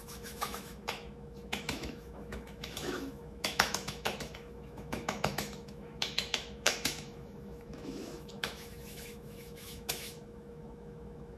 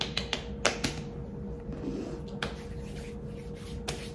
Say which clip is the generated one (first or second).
first